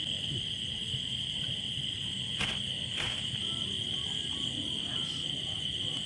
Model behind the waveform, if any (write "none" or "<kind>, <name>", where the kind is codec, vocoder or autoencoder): none